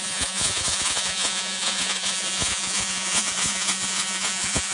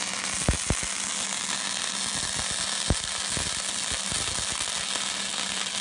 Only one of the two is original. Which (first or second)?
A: second